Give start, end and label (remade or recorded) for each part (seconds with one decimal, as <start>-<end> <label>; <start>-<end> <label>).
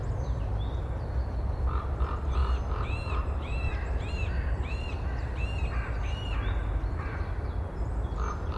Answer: 0.0-8.6 recorded